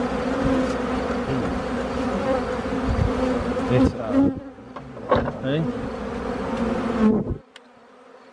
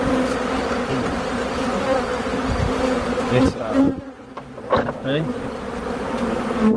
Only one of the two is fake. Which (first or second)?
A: second